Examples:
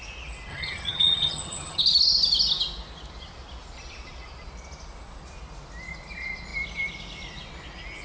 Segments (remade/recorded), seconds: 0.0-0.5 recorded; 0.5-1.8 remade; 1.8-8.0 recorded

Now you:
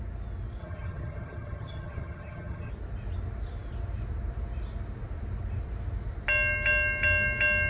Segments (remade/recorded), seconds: 0.0-0.6 recorded; 0.6-2.7 remade; 2.7-7.7 recorded

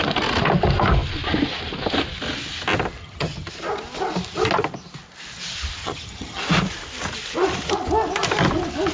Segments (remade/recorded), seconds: 0.0-3.0 recorded; 3.0-3.5 remade; 3.5-5.8 recorded; 5.8-6.4 remade; 6.4-8.9 recorded